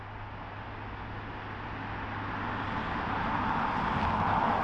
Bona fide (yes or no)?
yes